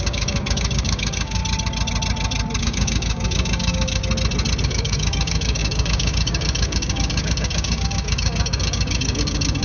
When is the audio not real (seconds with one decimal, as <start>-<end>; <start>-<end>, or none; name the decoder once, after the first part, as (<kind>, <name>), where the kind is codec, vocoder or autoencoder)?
0.0-1.4 (codec, DAC); 2.6-4.0; 4.6-9.6